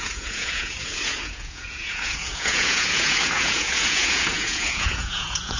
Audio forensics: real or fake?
fake